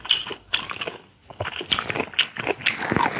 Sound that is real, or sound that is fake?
fake